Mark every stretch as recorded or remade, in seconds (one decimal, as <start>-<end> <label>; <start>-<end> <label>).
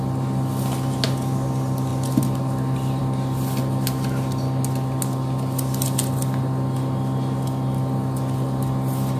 0.0-9.2 recorded